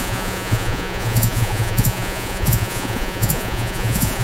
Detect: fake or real fake